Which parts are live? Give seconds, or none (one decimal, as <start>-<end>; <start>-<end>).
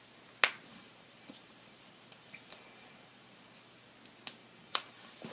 0.0-0.7; 3.9-4.4